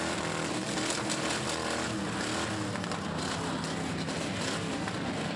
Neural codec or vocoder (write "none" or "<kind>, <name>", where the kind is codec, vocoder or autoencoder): none